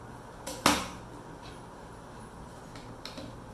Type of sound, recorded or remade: recorded